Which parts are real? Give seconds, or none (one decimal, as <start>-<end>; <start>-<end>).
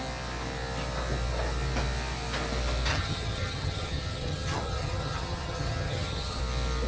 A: 0.0-2.9; 6.4-6.9